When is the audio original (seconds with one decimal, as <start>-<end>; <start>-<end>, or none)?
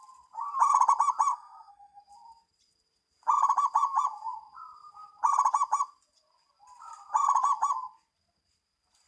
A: 0.0-1.3; 2.0-9.1